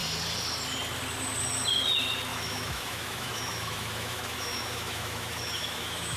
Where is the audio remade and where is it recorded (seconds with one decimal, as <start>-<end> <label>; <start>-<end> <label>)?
0.0-2.3 recorded; 2.3-6.2 remade